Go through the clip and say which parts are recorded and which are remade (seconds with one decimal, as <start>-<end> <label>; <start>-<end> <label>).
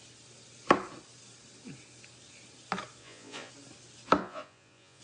0.0-3.0 recorded; 3.0-3.5 remade; 3.5-4.2 recorded; 4.2-5.0 remade